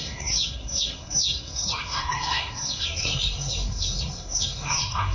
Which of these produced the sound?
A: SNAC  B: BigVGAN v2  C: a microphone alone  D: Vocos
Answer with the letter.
A